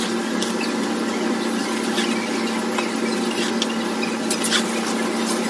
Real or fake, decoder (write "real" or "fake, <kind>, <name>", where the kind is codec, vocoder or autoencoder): real